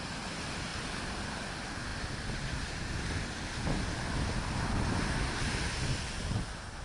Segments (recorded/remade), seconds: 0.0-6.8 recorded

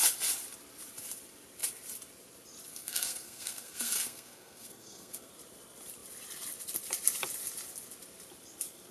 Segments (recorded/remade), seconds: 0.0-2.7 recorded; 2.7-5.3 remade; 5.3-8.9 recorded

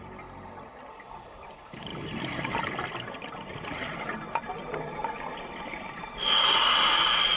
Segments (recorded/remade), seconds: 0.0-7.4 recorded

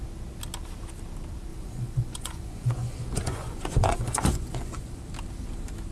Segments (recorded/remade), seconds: 0.0-1.5 recorded; 1.5-5.0 remade; 5.0-5.9 recorded

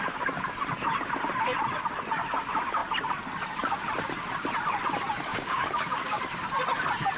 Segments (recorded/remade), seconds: 0.0-5.3 recorded; 5.3-6.2 remade; 6.2-7.2 recorded

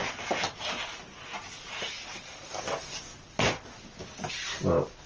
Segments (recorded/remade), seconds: 0.0-5.1 recorded

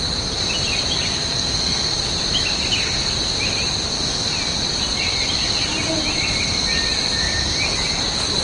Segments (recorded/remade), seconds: 0.0-1.1 recorded; 1.1-2.0 remade; 2.0-8.4 recorded